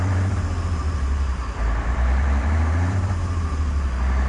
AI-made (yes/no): yes